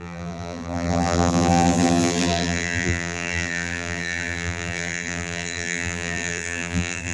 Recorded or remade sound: remade